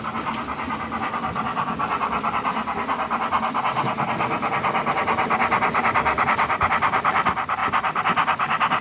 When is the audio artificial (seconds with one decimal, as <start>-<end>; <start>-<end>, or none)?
none